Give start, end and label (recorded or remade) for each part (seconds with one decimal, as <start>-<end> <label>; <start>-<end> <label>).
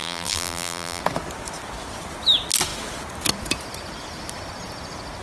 0.0-1.0 remade; 1.0-5.2 recorded